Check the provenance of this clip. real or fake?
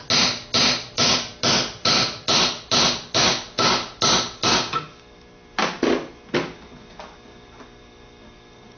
real